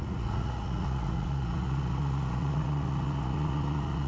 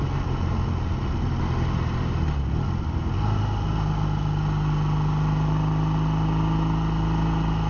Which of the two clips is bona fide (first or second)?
second